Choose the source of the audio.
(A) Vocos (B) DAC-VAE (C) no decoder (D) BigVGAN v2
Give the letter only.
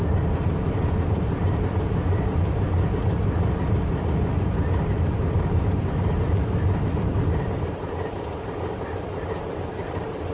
D